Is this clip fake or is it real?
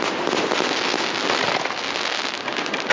real